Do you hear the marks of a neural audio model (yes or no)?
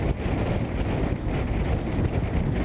no